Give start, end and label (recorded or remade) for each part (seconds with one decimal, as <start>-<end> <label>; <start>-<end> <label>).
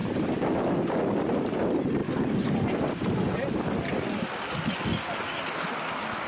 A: 0.0-6.3 recorded